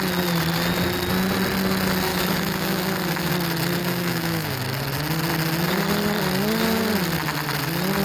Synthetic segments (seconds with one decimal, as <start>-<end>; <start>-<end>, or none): 2.1-3.3; 3.8-4.6